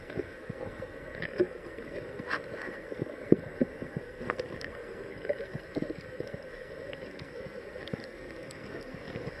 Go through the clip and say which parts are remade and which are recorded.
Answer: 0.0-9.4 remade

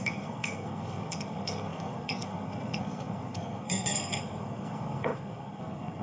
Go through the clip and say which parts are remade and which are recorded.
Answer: 0.0-6.0 remade

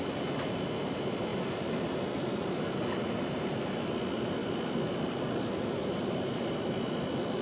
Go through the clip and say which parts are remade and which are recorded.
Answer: 0.0-7.4 recorded

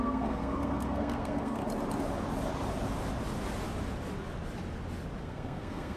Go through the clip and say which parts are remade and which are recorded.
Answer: 0.0-1.6 remade; 1.6-5.2 recorded; 5.2-6.0 remade

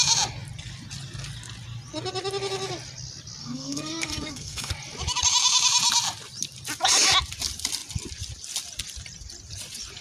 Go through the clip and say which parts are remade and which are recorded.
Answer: 0.0-3.4 recorded; 3.4-4.7 remade; 4.7-10.0 recorded

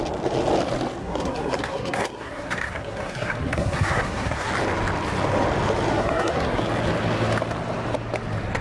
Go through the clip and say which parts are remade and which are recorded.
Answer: 0.0-1.0 recorded; 1.0-4.5 remade; 4.5-5.9 recorded; 5.9-6.6 remade; 6.6-8.6 recorded

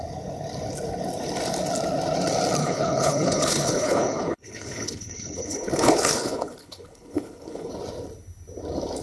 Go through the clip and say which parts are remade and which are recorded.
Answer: 0.0-2.6 recorded; 2.6-7.7 remade; 7.7-9.0 recorded

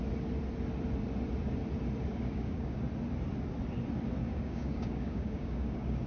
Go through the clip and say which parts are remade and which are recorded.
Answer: 0.0-2.1 recorded; 2.1-2.8 remade; 2.8-4.3 recorded; 4.3-6.1 remade